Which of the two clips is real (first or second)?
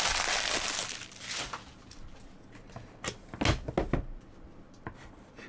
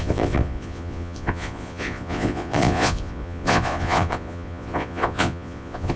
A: first